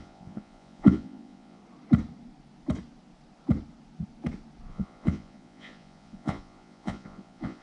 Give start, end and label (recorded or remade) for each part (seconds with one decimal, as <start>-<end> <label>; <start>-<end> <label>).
0.0-1.6 remade; 1.6-4.7 recorded; 4.7-7.6 remade